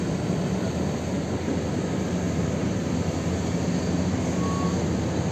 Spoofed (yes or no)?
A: no